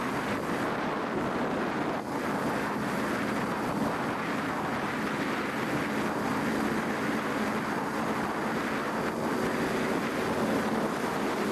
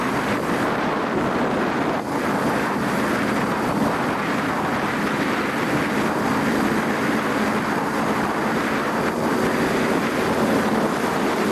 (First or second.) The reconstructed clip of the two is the second